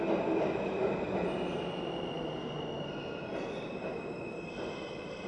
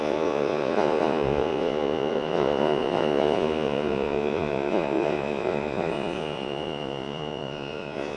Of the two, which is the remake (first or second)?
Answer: second